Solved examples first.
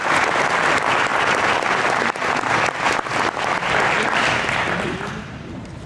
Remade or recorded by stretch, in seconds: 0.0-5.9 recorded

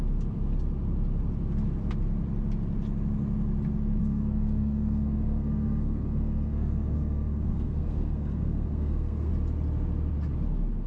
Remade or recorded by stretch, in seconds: 0.0-4.0 recorded; 4.0-9.3 remade; 9.3-10.9 recorded

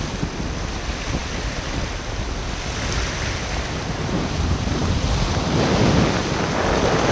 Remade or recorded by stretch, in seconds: 0.0-7.1 recorded

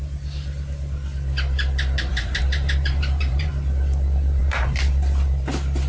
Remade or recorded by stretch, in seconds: 0.0-2.1 recorded; 2.1-3.5 remade; 3.5-4.4 recorded; 4.4-4.9 remade; 4.9-5.9 recorded

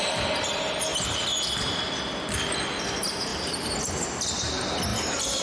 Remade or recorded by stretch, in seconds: 0.0-0.9 recorded; 0.9-1.8 remade; 1.8-3.3 recorded; 3.3-3.8 remade; 3.8-4.9 recorded; 4.9-5.4 remade

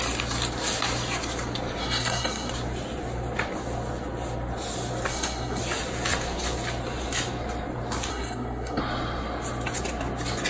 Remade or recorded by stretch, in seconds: 0.0-1.8 recorded; 1.8-2.5 remade; 2.5-5.1 recorded; 5.1-5.6 remade; 5.6-8.1 recorded; 8.1-8.8 remade; 8.8-10.5 recorded

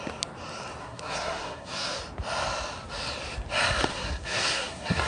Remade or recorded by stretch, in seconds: 0.0-0.8 recorded; 0.8-2.0 remade; 2.0-3.9 recorded; 3.9-5.1 remade